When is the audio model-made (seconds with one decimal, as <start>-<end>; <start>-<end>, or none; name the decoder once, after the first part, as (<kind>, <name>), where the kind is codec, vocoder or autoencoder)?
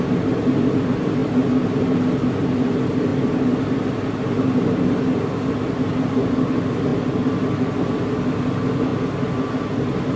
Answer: 3.1-4.1 (vocoder, BigVGAN v2); 6.9-7.8